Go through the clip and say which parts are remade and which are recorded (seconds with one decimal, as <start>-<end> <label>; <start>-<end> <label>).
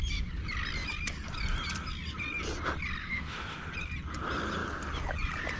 0.0-3.0 recorded; 3.0-3.7 remade; 3.7-5.6 recorded